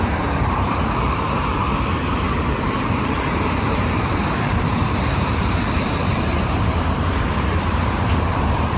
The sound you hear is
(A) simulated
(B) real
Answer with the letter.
A